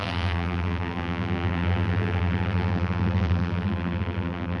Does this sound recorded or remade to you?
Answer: remade